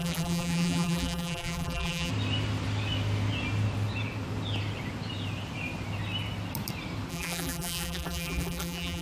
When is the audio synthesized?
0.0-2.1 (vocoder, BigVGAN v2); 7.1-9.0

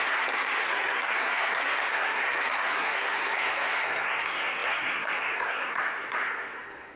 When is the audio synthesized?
0.0-7.0 (codec, SNAC)

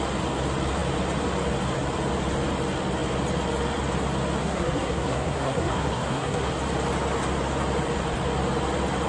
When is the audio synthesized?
4.4-6.5 (codec, SNAC)

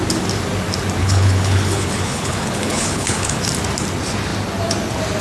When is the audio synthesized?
1.0-3.4 (codec, HILCodec)